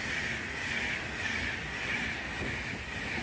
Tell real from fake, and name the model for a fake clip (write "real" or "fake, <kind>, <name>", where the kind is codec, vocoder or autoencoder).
real